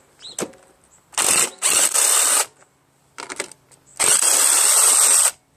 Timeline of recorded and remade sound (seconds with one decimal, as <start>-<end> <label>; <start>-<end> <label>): 0.0-3.9 recorded; 3.9-4.9 remade; 4.9-5.6 recorded